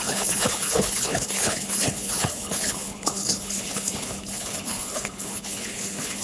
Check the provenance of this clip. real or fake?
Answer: fake